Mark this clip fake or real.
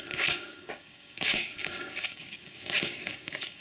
fake